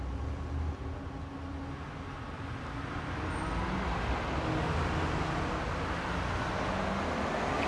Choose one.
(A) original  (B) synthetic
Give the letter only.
A